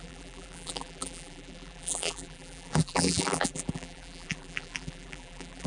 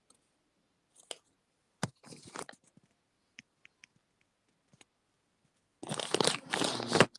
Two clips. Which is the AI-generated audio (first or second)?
first